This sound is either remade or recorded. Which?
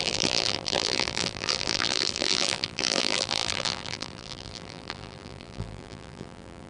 remade